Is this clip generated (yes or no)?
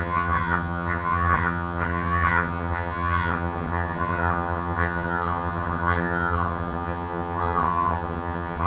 yes